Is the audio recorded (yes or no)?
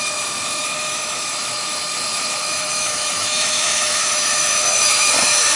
no